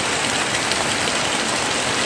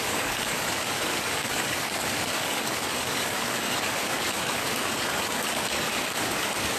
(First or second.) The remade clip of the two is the second